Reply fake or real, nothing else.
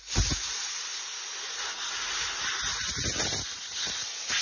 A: real